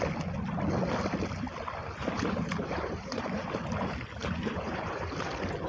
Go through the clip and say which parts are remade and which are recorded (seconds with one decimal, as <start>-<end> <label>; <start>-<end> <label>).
0.0-1.8 recorded; 1.8-3.2 remade; 3.2-4.2 recorded; 4.2-5.1 remade; 5.1-5.7 recorded